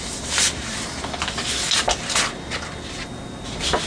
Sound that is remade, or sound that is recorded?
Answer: recorded